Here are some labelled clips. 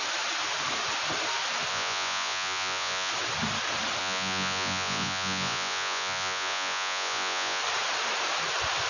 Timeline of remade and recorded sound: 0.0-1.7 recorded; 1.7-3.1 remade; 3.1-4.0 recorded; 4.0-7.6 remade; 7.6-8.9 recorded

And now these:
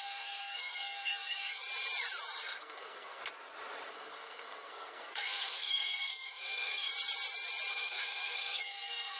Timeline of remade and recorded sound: 0.0-1.6 remade; 1.6-2.6 recorded; 2.6-3.2 remade; 3.2-3.9 recorded; 3.9-6.9 remade; 6.9-7.7 recorded; 7.7-9.2 remade

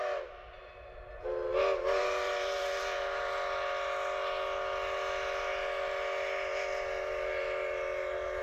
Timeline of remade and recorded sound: 0.0-8.4 recorded

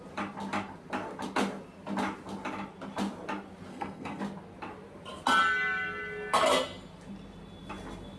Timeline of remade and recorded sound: 0.0-3.7 recorded; 3.7-4.2 remade; 4.2-8.2 recorded

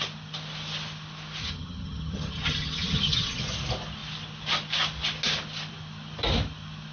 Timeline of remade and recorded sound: 0.0-1.4 recorded; 1.4-3.4 remade; 3.4-6.9 recorded

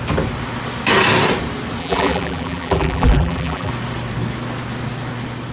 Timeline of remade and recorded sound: 0.0-1.8 recorded; 1.8-3.7 remade; 3.7-5.5 recorded

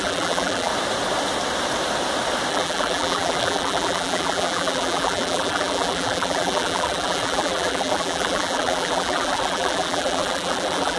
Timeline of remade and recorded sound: 0.0-0.7 remade; 0.7-2.5 recorded; 2.5-11.0 remade

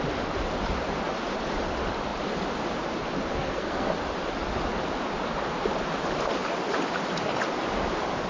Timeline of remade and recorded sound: 0.0-3.3 recorded; 3.3-3.9 remade; 3.9-8.3 recorded